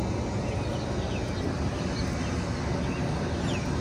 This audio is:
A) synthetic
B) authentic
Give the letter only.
B